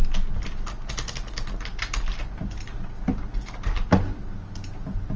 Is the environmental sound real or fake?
real